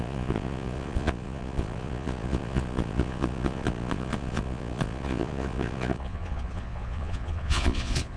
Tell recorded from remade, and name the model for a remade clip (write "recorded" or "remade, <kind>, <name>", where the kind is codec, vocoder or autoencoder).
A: remade, vocoder, Vocos